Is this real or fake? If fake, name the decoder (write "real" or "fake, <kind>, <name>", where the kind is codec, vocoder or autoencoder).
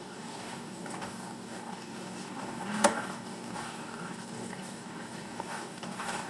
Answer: fake, codec, DAC